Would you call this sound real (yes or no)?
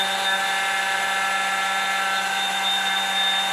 yes